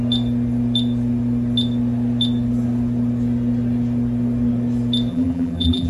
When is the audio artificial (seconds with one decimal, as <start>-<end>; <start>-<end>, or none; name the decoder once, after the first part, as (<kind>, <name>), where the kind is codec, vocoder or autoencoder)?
5.1-5.9 (vocoder, BigVGAN v2)

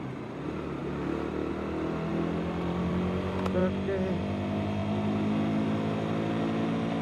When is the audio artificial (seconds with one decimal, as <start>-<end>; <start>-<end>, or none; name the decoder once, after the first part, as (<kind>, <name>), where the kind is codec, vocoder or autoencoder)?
none

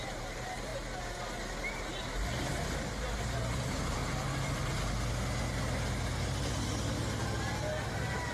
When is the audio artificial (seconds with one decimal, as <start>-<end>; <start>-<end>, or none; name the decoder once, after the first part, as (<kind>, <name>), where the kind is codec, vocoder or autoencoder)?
0.0-0.7 (vocoder, BigVGAN v2); 2.4-4.0; 7.9-8.3

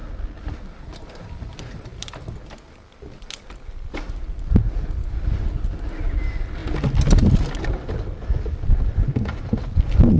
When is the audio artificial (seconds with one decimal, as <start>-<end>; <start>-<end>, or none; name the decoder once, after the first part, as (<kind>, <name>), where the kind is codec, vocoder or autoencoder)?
none

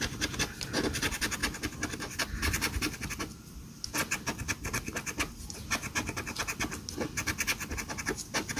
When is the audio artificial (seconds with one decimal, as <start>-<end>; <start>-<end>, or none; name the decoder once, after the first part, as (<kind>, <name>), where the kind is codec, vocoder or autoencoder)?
0.0-1.4 (vocoder, BigVGAN v2); 2.2-4.0

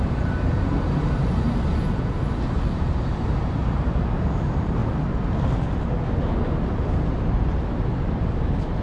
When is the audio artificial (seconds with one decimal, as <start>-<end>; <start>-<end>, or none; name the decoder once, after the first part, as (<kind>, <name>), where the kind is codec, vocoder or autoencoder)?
0.0-4.8 (vocoder, BigVGAN v2); 7.6-8.8

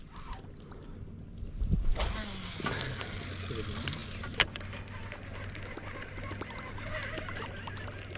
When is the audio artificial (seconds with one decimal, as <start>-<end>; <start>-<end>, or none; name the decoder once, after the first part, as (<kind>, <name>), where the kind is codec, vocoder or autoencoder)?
none